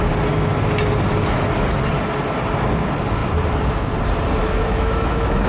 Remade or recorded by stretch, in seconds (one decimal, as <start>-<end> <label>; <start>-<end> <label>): 0.0-4.4 recorded; 4.4-5.5 remade